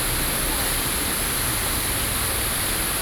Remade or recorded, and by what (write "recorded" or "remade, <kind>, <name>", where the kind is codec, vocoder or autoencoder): recorded